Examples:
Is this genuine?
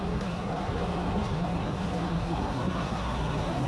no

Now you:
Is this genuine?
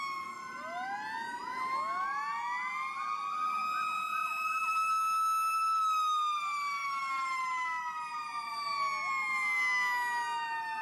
yes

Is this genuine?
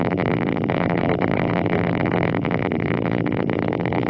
no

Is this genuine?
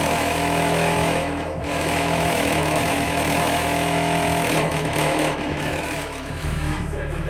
no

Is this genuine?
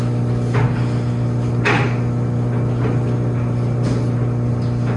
yes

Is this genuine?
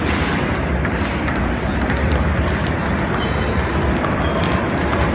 yes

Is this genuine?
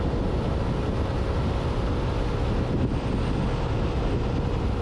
yes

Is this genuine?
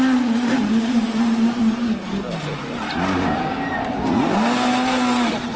yes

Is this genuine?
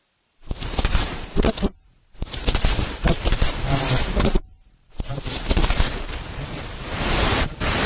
no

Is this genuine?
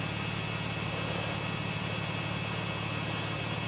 yes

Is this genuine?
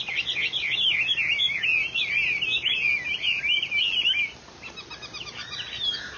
yes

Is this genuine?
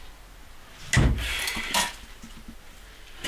yes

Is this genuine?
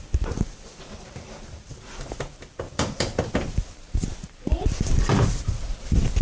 no